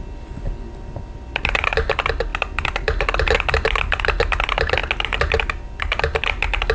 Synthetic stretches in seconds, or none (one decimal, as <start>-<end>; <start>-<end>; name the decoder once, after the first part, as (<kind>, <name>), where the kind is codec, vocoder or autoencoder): none